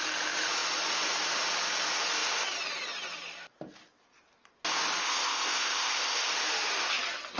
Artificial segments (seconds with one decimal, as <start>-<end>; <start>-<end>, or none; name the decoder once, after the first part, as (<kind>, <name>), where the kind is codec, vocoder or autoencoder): 5.0-6.3 (codec, ZipCodec)